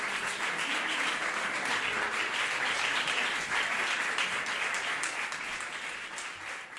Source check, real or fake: real